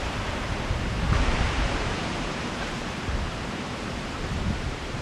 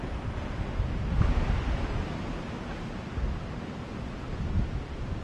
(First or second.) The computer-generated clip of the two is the first